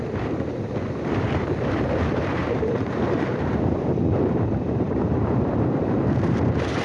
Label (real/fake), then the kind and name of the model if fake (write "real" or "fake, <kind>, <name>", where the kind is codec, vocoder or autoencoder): fake, vocoder, BigVGAN v2